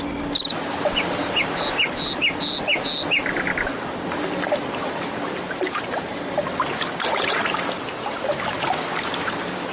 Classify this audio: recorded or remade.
recorded